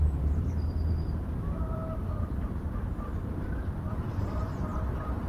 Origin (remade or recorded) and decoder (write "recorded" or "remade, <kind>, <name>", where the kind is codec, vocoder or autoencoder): remade, vocoder, BigVGAN v2